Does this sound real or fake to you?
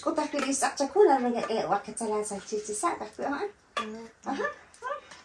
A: real